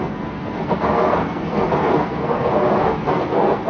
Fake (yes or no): yes